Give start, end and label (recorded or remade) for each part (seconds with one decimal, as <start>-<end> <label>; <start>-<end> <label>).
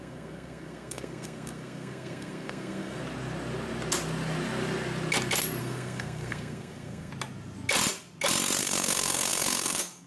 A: 0.0-3.0 remade; 3.0-5.6 recorded; 5.6-7.1 remade; 7.1-8.6 recorded; 8.6-10.1 remade